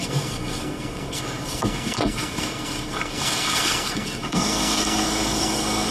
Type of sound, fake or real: fake